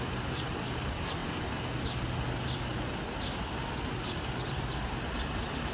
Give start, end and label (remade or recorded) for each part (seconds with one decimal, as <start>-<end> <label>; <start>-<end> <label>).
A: 0.0-5.7 recorded